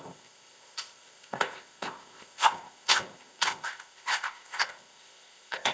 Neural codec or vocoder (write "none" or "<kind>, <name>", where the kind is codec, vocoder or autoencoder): codec, ZipCodec